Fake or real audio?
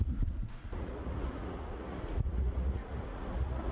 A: fake